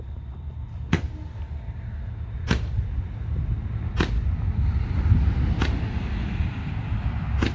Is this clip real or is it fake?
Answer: real